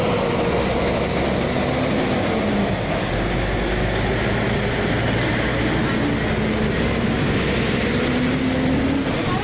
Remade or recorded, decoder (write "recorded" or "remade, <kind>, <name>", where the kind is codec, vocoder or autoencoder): recorded